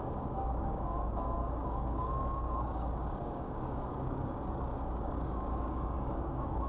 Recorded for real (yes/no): no